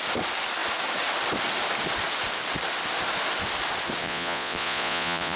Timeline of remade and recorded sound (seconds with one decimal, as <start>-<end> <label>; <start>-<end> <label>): 0.0-4.0 recorded; 4.0-5.4 remade